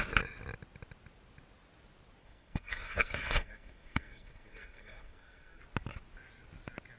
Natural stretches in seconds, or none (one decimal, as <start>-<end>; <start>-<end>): 0.0-2.2; 5.6-7.0